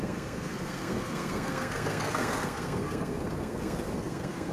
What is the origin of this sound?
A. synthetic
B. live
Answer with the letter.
A